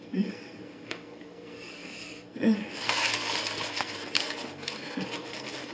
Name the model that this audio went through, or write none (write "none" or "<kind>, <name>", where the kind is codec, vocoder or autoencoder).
codec, SNAC